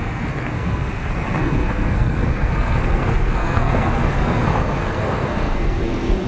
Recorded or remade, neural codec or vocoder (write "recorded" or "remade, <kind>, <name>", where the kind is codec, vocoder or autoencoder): remade, codec, SNAC